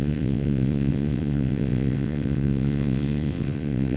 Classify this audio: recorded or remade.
remade